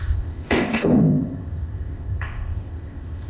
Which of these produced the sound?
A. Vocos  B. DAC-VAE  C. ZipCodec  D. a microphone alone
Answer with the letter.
C